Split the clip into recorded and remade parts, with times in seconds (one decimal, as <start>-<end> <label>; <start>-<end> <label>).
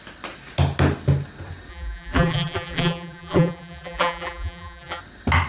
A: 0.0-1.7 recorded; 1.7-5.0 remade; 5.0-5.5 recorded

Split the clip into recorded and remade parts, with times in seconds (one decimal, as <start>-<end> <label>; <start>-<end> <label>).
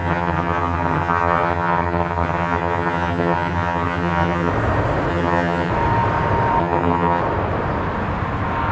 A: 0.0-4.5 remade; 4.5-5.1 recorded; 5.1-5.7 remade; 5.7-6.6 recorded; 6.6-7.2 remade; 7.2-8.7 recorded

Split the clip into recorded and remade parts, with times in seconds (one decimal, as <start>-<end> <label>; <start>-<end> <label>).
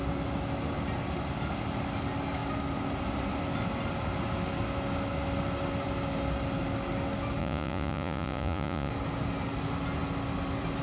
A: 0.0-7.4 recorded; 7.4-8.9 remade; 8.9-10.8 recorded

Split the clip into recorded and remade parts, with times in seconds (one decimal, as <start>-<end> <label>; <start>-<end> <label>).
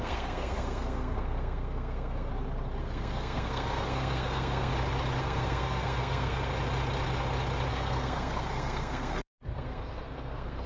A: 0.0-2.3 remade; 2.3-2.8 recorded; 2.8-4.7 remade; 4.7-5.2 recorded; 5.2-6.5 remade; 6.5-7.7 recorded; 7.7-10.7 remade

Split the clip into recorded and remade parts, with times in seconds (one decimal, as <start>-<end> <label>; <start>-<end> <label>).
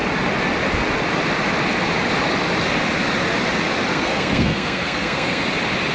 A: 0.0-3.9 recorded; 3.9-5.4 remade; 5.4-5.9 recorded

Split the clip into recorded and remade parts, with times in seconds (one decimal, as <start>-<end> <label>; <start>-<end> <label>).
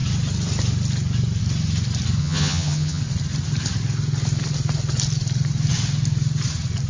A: 0.0-2.2 recorded; 2.2-3.0 remade; 3.0-6.9 recorded